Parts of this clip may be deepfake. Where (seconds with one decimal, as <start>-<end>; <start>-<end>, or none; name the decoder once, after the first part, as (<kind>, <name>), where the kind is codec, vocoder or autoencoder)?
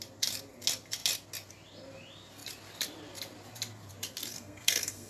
4.3-5.1 (codec, SNAC)